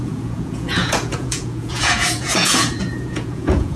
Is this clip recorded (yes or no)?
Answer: no